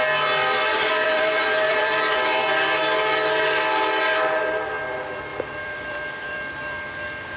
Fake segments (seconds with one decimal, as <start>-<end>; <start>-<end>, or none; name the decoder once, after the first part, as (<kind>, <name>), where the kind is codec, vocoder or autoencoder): 0.7-2.0 (vocoder, BigVGAN v2); 5.3-6.5